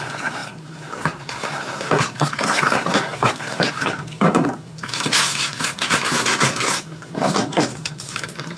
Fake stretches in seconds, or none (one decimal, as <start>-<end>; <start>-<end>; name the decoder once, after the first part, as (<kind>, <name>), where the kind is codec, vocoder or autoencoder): 0.0-8.6 (codec, SNAC)